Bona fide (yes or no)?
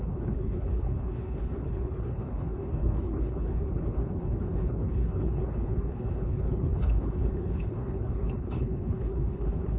no